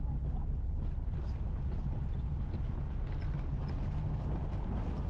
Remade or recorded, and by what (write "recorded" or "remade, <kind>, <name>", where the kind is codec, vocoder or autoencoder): recorded